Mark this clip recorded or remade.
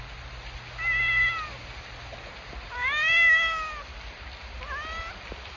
recorded